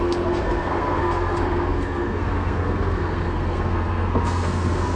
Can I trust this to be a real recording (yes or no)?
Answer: no